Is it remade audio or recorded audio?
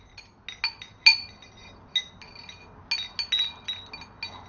recorded